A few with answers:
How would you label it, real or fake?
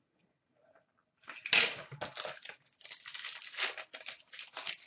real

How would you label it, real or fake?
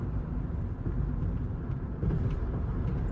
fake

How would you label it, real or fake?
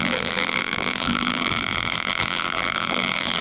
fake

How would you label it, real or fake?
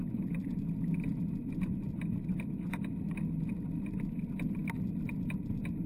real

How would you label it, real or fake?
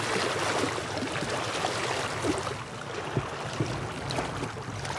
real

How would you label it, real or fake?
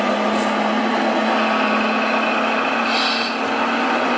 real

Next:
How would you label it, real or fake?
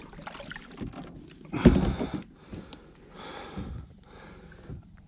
real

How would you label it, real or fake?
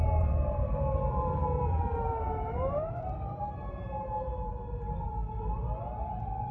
fake